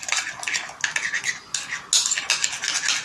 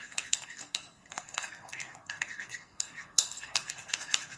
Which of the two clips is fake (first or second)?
second